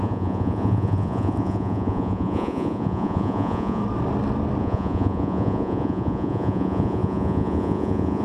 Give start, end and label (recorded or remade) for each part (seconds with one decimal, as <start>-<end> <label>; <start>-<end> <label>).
0.0-3.8 remade; 3.8-4.6 recorded; 4.6-8.2 remade